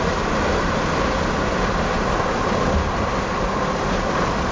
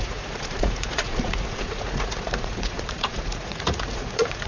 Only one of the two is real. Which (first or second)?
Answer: first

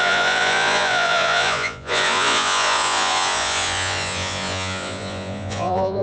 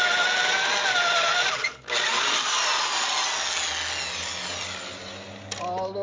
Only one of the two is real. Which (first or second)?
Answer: second